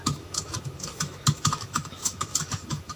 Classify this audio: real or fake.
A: fake